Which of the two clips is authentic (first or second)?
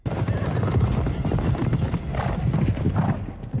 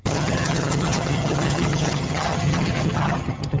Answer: first